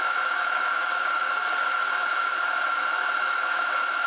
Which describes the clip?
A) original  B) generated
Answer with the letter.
B